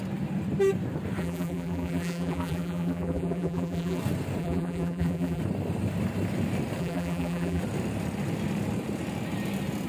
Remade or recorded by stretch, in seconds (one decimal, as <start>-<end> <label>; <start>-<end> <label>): 0.0-1.2 recorded; 1.2-4.0 remade; 4.0-4.4 recorded; 4.4-5.4 remade; 5.4-6.8 recorded; 6.8-7.6 remade; 7.6-9.9 recorded